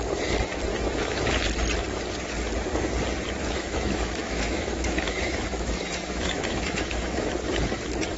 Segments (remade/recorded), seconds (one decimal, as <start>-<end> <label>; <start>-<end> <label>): 0.0-0.7 recorded; 0.7-1.4 remade; 1.4-3.4 recorded; 3.4-7.3 remade; 7.3-8.2 recorded